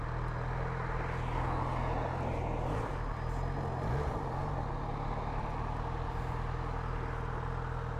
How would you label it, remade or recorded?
recorded